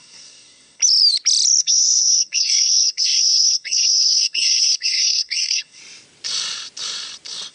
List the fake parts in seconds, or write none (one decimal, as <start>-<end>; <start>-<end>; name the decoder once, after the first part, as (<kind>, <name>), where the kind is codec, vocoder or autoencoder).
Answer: 0.0-0.8 (codec, SNAC); 1.6-5.8